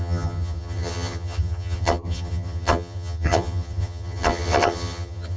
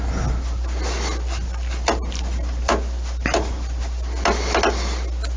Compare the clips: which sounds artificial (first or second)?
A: first